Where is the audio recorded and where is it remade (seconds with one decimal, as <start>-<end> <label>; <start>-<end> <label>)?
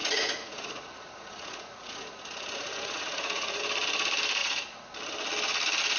0.0-3.6 remade; 3.6-4.4 recorded; 4.4-4.9 remade; 4.9-6.0 recorded